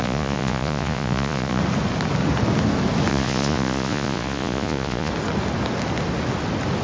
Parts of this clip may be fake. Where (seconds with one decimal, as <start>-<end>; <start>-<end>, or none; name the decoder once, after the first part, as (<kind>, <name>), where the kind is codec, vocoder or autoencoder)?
0.0-1.6 (vocoder, Vocos); 3.1-5.1